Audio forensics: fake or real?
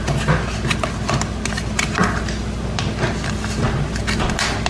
real